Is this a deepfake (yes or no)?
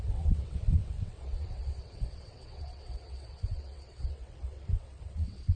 yes